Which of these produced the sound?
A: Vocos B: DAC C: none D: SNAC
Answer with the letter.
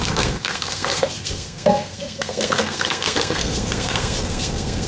D